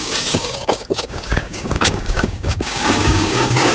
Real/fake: fake